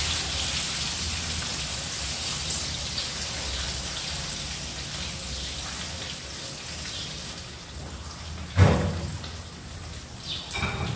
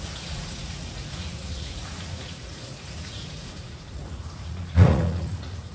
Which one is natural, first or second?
first